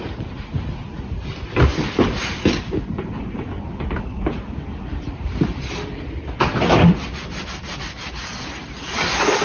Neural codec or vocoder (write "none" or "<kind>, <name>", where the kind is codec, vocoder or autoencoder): none